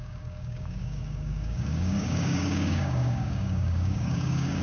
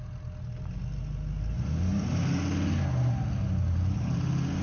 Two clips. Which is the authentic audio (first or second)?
second